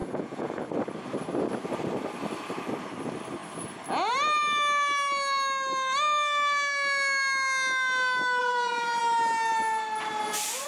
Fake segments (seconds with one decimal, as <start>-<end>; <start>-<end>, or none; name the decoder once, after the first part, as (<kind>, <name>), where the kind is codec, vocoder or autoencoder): 0.0-0.6 (vocoder, Vocos); 8.4-9.0